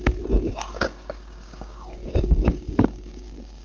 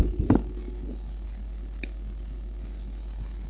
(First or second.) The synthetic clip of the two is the first